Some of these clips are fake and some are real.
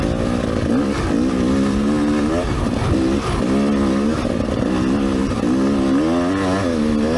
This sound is real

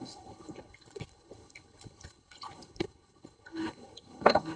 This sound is fake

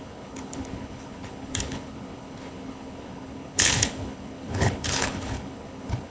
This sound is fake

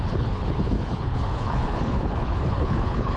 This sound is fake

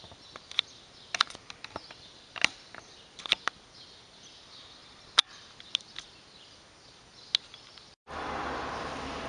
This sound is real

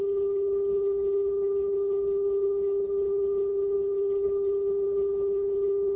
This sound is fake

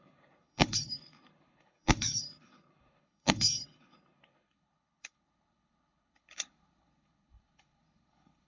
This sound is fake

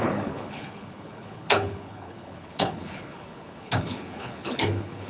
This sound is fake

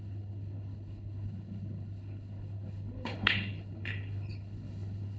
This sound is fake